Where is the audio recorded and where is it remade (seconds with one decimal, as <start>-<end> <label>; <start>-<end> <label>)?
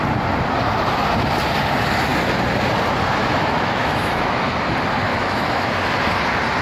0.0-3.2 recorded; 3.2-4.6 remade; 4.6-5.1 recorded; 5.1-5.7 remade; 5.7-6.6 recorded